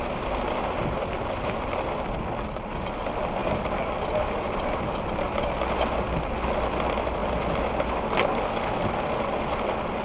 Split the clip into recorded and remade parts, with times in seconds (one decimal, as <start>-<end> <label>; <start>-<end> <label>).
0.0-3.4 recorded; 3.4-4.8 remade; 4.8-10.0 recorded